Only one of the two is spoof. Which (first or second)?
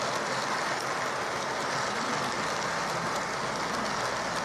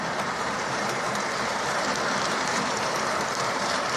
second